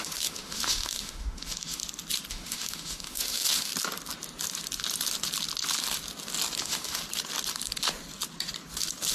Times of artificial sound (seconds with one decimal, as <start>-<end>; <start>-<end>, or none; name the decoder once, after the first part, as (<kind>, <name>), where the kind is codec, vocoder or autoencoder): 0.0-1.8 (autoencoder, DAC-VAE); 2.3-3.7; 6.6-7.0